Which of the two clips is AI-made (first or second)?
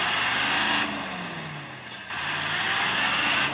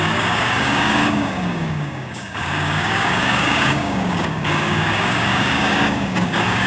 second